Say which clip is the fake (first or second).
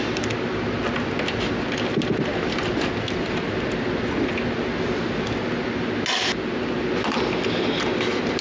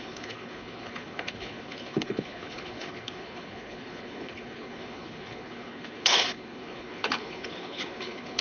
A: second